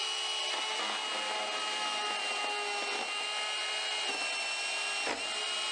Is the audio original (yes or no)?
yes